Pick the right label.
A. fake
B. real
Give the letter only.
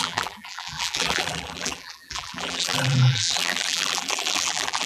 A